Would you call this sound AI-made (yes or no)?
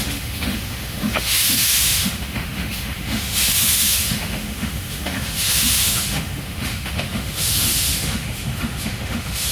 yes